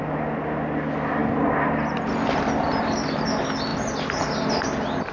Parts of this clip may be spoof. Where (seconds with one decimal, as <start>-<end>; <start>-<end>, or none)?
none

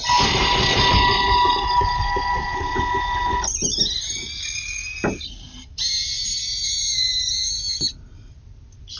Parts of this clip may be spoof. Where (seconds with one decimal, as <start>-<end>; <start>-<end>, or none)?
none